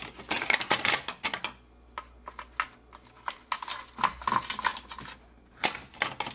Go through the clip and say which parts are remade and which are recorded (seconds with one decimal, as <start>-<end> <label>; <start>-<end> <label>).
0.0-6.3 recorded